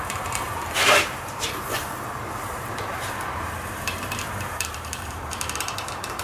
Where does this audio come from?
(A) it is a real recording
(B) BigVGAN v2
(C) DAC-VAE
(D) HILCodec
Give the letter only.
B